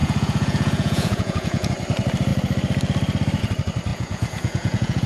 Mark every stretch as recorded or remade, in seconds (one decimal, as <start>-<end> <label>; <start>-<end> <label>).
0.0-1.7 remade; 1.7-3.9 recorded; 3.9-5.1 remade